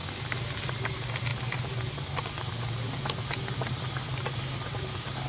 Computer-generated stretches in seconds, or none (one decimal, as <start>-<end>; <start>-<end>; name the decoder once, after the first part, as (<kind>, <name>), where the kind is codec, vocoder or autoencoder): none